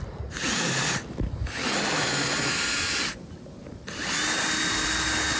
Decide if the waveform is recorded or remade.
recorded